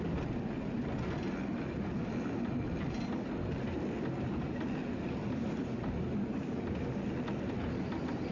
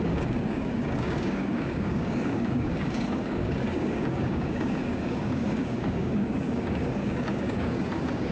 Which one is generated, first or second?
second